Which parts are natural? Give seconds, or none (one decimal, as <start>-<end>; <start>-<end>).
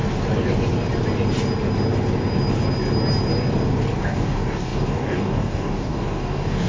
0.0-4.0